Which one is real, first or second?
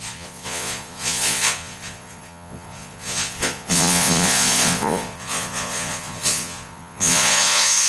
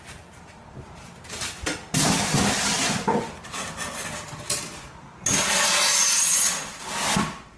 second